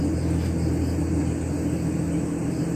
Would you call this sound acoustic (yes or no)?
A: yes